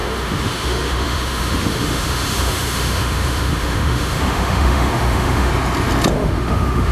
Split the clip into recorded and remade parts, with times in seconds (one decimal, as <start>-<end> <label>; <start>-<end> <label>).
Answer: 0.0-5.5 remade; 5.5-6.1 recorded; 6.1-6.9 remade